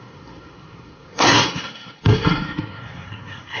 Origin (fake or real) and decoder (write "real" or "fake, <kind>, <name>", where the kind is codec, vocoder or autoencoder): fake, codec, SNAC